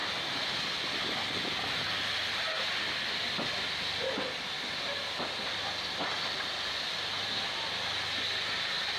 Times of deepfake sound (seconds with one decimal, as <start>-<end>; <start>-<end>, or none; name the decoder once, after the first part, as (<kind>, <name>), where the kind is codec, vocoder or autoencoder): none